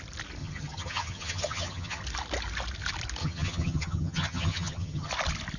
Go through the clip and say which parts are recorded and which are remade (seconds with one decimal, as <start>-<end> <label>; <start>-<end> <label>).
0.0-0.4 recorded; 0.4-2.0 remade; 2.0-3.2 recorded; 3.2-5.1 remade; 5.1-5.6 recorded